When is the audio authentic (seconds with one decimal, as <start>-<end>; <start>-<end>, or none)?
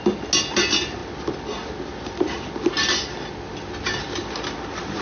0.0-5.0